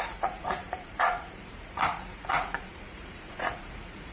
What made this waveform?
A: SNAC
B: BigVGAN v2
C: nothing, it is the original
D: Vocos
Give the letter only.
D